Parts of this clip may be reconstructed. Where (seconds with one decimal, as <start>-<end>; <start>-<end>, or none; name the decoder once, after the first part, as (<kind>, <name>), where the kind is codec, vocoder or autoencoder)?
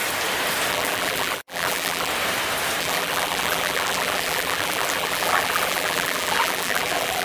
0.7-2.1 (vocoder, BigVGAN v2); 2.8-7.2